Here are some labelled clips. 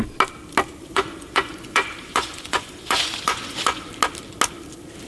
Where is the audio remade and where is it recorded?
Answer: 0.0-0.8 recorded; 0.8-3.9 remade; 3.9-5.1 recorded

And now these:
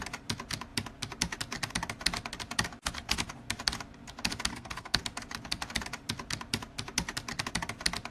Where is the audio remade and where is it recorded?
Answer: 0.0-4.5 recorded; 4.5-5.0 remade; 5.0-8.1 recorded

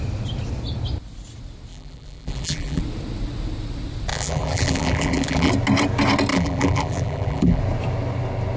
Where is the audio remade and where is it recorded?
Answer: 0.0-1.7 recorded; 1.7-2.8 remade; 2.8-4.1 recorded; 4.1-5.5 remade; 5.5-6.3 recorded; 6.3-7.6 remade; 7.6-8.6 recorded

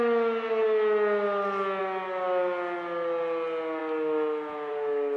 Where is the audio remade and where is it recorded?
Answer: 0.0-5.2 recorded

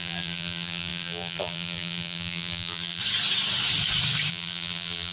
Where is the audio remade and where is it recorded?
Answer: 0.0-3.0 remade; 3.0-4.3 recorded; 4.3-5.1 remade

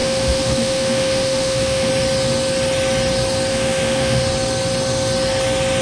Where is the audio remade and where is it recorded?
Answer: 0.0-1.9 remade; 1.9-3.5 recorded; 3.5-4.2 remade; 4.2-5.8 recorded

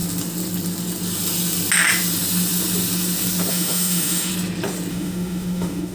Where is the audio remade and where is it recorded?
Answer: 0.0-3.5 recorded; 3.5-4.3 remade; 4.3-4.9 recorded; 4.9-5.9 remade